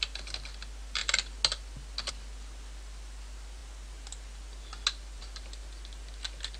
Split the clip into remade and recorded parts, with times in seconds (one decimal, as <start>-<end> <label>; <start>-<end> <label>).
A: 0.0-6.6 recorded

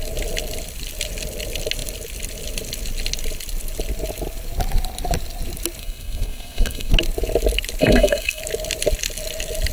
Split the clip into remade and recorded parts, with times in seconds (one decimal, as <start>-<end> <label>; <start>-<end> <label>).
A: 0.0-5.8 recorded; 5.8-6.9 remade; 6.9-7.8 recorded; 7.8-8.4 remade; 8.4-9.7 recorded

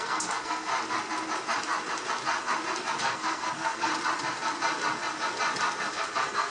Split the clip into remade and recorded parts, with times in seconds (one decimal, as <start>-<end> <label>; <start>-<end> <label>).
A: 0.0-0.7 remade; 0.7-3.0 recorded; 3.0-3.9 remade; 3.9-5.9 recorded; 5.9-6.5 remade

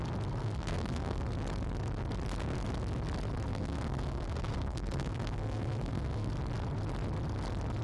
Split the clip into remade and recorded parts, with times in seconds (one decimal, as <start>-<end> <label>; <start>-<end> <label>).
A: 0.0-0.4 recorded; 0.4-1.2 remade; 1.2-3.5 recorded; 3.5-6.3 remade; 6.3-7.8 recorded

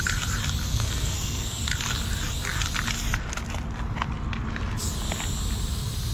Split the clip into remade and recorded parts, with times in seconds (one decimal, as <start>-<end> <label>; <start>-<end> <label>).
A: 0.0-0.7 recorded; 0.7-1.6 remade; 1.6-6.1 recorded